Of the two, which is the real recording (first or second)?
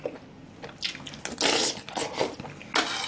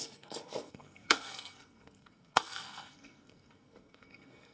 first